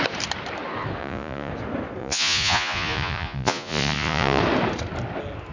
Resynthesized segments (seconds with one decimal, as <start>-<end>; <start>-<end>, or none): 1.0-1.5; 2.0-4.4